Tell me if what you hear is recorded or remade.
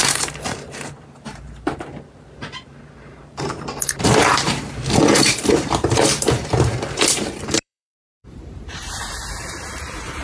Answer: remade